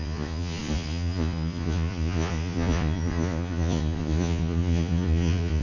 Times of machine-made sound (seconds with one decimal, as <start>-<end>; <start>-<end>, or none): 0.0-5.6

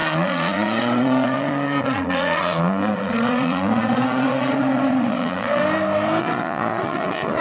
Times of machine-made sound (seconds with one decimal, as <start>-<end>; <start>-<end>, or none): 0.0-5.6; 6.2-7.4

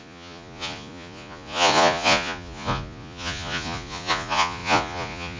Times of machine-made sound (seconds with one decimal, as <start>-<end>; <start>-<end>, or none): 0.0-5.4